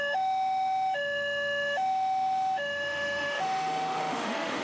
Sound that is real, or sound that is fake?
fake